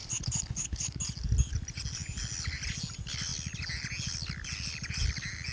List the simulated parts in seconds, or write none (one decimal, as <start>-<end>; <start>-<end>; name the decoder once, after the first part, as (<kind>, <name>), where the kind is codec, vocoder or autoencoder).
0.0-1.0 (codec, HILCodec)